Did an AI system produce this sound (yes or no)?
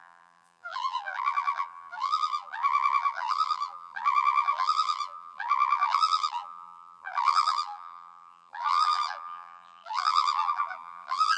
yes